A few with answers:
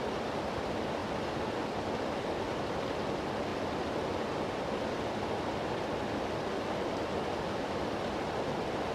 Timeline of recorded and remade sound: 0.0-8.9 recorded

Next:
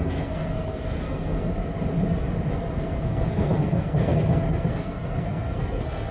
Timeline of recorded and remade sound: 0.0-1.5 remade; 1.5-2.5 recorded; 2.5-6.1 remade

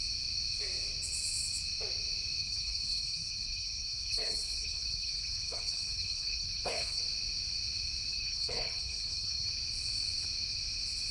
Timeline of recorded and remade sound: 0.0-2.4 recorded; 2.4-7.0 remade; 7.0-8.1 recorded; 8.1-9.5 remade; 9.5-11.1 recorded

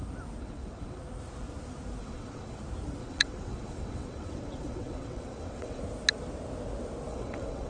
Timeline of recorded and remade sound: 0.0-0.4 recorded; 0.4-1.0 remade; 1.0-2.0 recorded; 2.0-2.6 remade; 2.6-3.0 recorded; 3.0-5.8 remade; 5.8-7.1 recorded; 7.1-7.7 remade

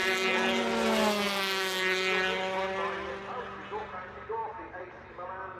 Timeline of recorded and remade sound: 0.0-5.6 recorded

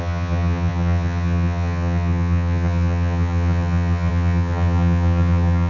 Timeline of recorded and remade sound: 0.0-5.7 remade

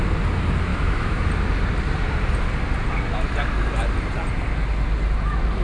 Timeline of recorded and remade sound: 0.0-0.7 recorded; 0.7-1.3 remade; 1.3-5.6 recorded